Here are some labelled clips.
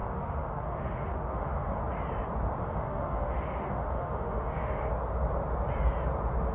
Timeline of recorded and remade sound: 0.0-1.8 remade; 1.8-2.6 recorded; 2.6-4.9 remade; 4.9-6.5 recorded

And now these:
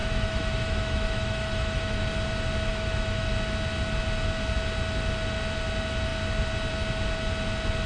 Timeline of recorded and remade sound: 0.0-2.0 remade; 2.0-2.7 recorded; 2.7-3.3 remade; 3.3-7.9 recorded

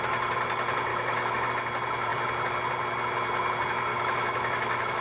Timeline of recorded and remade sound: 0.0-0.9 recorded; 0.9-1.5 remade; 1.5-3.9 recorded; 3.9-5.0 remade

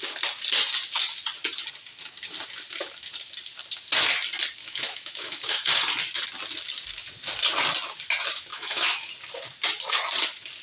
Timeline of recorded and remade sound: 0.0-4.6 recorded; 4.6-5.7 remade; 5.7-8.5 recorded; 8.5-9.1 remade; 9.1-10.6 recorded

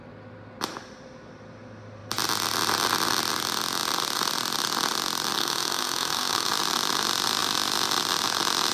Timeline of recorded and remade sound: 0.0-5.4 recorded; 5.4-6.5 remade; 6.5-8.7 recorded

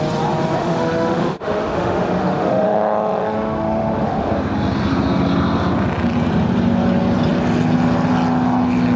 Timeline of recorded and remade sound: 0.0-0.6 recorded; 0.6-4.3 remade; 4.3-9.0 recorded